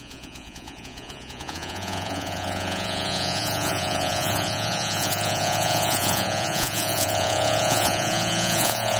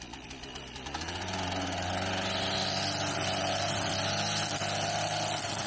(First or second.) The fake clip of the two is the first